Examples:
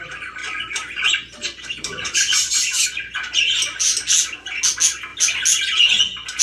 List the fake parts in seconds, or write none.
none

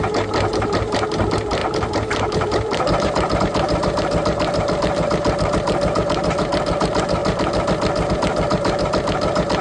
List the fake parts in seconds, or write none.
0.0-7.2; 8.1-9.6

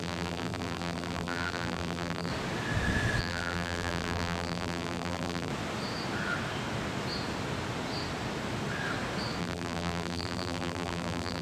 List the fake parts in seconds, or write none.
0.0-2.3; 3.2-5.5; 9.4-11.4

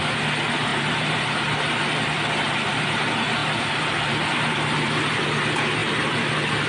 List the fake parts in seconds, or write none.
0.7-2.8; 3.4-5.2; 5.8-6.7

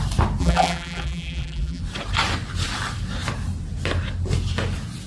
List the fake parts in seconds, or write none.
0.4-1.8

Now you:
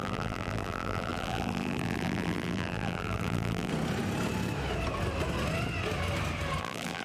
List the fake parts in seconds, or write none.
0.0-3.7; 6.6-7.0

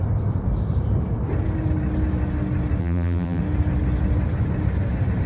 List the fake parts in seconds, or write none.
2.8-3.4